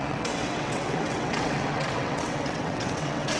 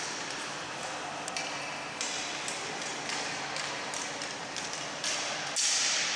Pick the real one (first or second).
second